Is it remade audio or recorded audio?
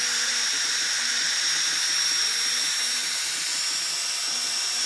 recorded